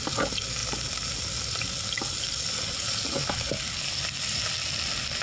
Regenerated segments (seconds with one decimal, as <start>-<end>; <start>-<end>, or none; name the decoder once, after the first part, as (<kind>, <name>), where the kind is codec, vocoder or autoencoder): none